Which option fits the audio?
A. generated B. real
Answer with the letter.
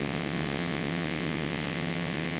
A